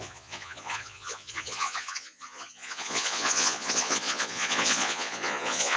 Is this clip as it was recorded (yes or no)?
no